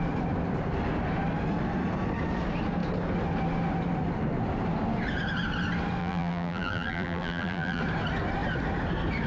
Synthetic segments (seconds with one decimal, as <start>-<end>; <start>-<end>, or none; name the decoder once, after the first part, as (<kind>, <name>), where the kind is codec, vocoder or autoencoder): 6.0-7.8 (vocoder, BigVGAN v2)